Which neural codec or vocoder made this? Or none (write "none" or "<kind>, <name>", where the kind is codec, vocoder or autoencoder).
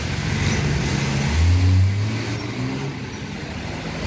none